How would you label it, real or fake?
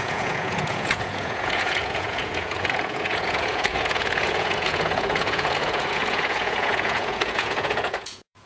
fake